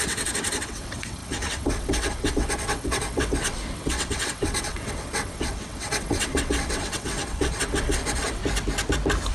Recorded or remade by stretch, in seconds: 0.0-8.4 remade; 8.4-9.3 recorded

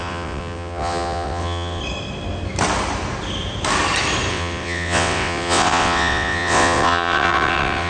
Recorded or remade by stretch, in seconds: 0.0-1.8 remade; 1.8-4.3 recorded; 4.3-7.9 remade

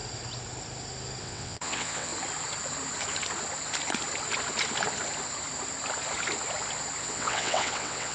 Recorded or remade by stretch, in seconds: 0.0-1.2 recorded; 1.2-2.1 remade; 2.1-7.0 recorded; 7.0-8.1 remade